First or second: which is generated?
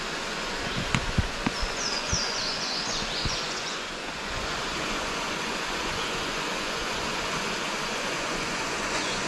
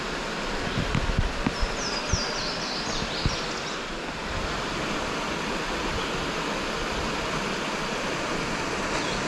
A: first